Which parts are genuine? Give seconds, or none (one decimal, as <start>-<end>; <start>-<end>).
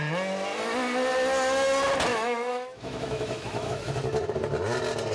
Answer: 0.0-2.1; 3.9-5.1